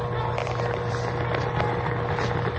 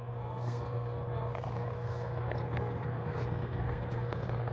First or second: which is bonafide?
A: first